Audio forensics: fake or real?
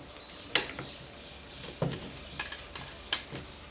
real